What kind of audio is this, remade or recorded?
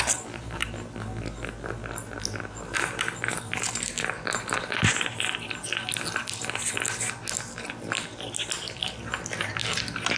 recorded